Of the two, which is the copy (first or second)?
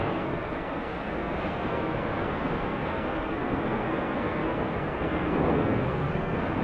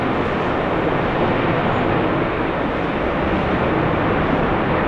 first